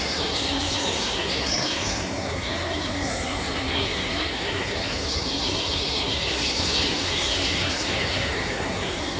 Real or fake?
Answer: fake